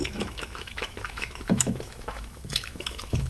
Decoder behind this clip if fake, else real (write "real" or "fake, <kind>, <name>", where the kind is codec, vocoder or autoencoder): fake, autoencoder, DAC-VAE